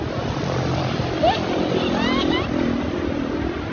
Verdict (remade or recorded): recorded